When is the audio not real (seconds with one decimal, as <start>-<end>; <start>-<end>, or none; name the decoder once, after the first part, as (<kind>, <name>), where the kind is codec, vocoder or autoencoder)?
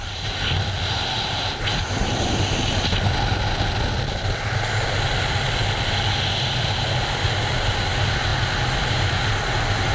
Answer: none